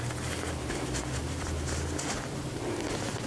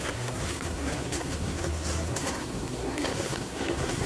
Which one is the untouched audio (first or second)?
first